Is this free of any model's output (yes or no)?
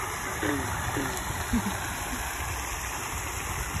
yes